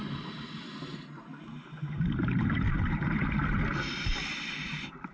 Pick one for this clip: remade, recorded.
recorded